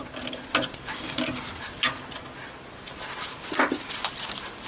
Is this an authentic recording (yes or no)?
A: yes